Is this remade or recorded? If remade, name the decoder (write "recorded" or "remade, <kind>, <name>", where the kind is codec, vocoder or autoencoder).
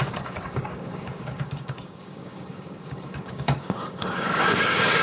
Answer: remade, codec, DAC